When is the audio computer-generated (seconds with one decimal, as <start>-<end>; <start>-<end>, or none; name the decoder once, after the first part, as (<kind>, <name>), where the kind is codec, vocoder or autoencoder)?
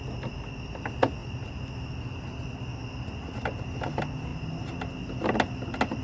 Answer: none